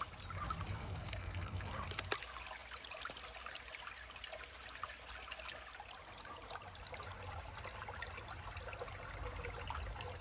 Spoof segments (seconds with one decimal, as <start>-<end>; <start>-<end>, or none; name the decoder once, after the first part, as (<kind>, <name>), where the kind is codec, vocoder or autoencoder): 0.7-1.7 (codec, SNAC)